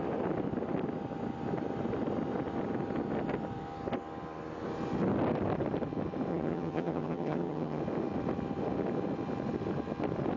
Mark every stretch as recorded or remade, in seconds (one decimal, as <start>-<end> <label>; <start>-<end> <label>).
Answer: 0.0-6.3 recorded; 6.3-7.8 remade; 7.8-10.4 recorded